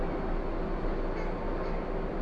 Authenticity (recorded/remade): recorded